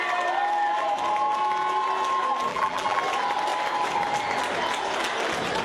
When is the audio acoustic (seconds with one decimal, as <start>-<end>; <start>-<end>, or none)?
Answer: 0.0-2.5; 3.0-5.6